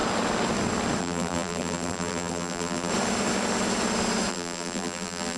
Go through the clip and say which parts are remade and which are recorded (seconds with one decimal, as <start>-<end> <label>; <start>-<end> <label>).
0.0-1.0 recorded; 1.0-2.9 remade; 2.9-4.3 recorded; 4.3-5.4 remade